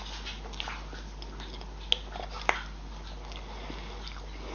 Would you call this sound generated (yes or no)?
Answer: no